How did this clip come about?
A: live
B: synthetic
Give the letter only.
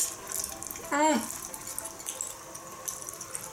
A